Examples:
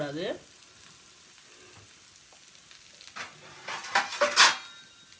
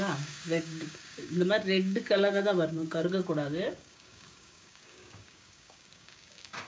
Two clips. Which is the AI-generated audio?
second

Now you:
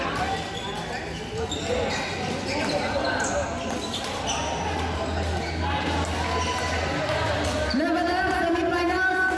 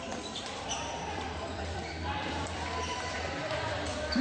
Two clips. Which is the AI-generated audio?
second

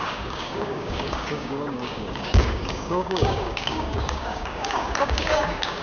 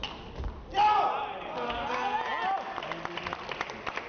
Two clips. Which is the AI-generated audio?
first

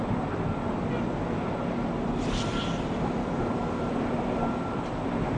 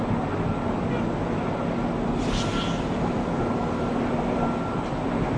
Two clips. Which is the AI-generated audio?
first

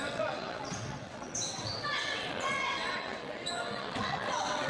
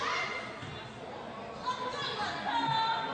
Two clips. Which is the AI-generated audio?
first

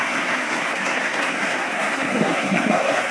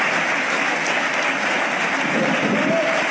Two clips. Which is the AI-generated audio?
first